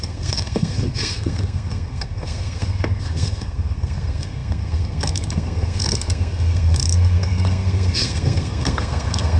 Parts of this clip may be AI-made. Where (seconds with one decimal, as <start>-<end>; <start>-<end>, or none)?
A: 0.0-9.4